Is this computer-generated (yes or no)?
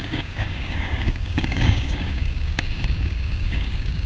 yes